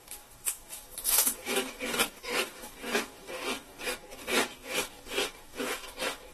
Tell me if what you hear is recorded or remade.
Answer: remade